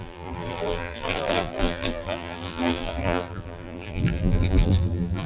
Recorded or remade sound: remade